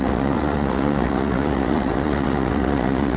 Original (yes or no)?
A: no